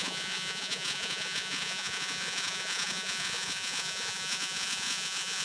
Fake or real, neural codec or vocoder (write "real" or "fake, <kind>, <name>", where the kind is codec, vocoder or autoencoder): fake, vocoder, Vocos